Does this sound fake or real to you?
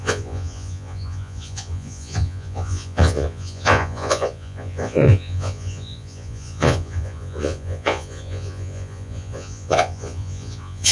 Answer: fake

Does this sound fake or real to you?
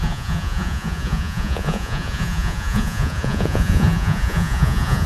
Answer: fake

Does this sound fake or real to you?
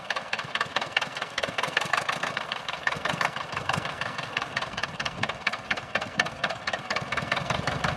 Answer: fake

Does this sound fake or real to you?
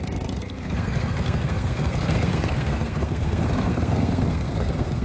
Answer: fake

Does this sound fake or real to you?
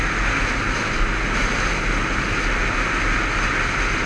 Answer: real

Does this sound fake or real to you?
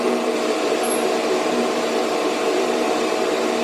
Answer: fake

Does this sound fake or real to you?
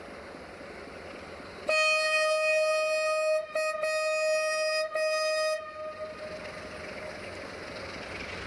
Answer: real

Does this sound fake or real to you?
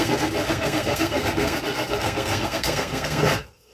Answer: fake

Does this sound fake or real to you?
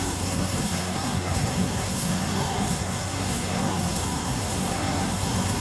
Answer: fake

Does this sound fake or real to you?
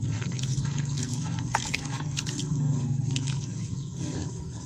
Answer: fake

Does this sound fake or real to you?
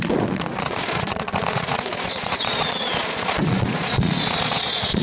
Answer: fake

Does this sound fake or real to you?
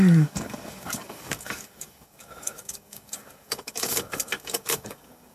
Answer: fake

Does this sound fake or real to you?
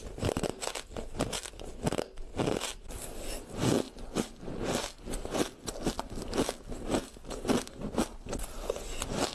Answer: real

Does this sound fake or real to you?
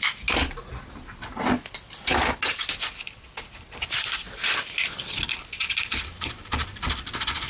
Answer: real